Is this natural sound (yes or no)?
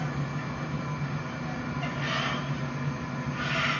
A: yes